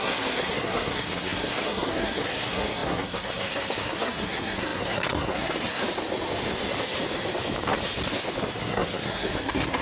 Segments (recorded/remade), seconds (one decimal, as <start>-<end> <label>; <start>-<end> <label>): 0.0-5.8 remade; 5.8-8.5 recorded; 8.5-9.8 remade